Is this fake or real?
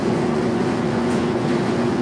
fake